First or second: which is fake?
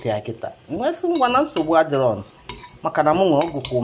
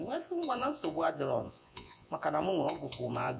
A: second